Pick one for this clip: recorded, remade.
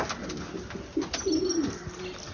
recorded